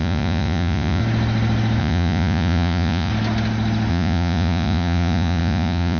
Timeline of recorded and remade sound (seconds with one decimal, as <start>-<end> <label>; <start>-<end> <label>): 0.0-1.0 remade; 1.0-1.8 recorded; 1.8-3.1 remade; 3.1-3.9 recorded; 3.9-6.0 remade